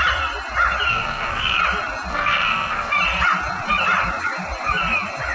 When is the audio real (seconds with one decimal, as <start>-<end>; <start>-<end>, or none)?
0.0-0.9; 1.6-2.1; 2.9-5.3